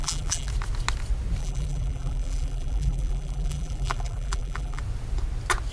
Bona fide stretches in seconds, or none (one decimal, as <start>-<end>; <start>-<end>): 0.5-1.4; 4.8-5.7